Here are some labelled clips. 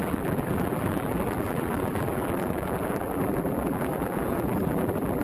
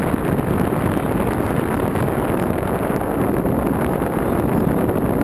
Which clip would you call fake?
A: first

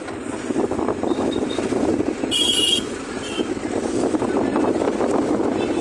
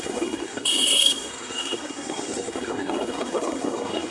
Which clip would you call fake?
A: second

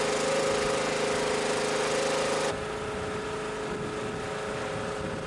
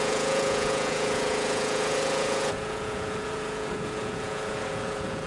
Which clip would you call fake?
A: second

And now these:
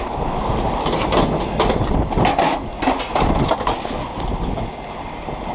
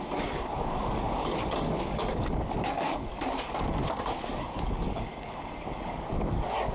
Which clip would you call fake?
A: second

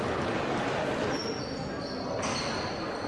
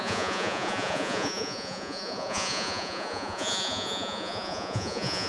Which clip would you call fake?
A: second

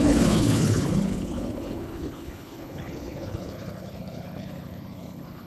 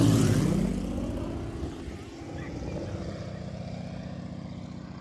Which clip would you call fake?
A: first